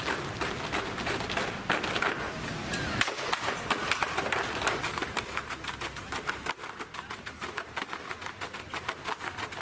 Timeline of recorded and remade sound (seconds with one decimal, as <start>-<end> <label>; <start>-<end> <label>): 0.0-9.6 recorded